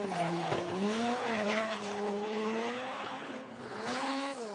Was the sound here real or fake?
fake